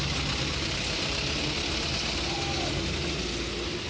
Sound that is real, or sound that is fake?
real